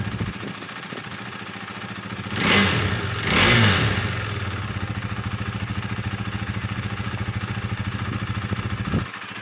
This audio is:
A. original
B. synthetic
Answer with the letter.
A